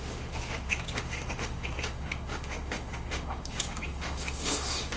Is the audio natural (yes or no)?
no